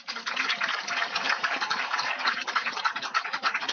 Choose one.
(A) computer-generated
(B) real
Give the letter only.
A